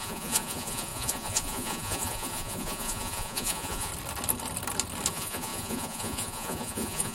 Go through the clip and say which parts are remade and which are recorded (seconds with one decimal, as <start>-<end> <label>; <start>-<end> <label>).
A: 0.0-3.9 remade; 3.9-5.1 recorded; 5.1-7.1 remade